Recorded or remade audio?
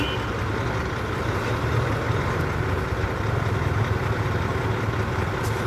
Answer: recorded